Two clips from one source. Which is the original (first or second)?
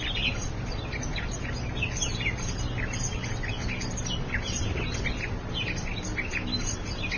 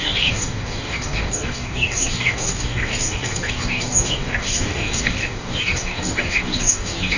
first